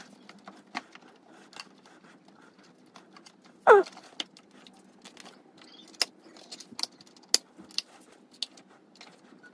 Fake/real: real